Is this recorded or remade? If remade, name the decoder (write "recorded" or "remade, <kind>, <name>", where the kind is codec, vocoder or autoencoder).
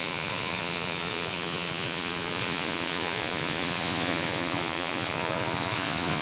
remade, vocoder, Vocos